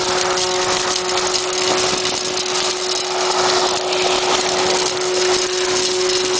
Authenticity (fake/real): real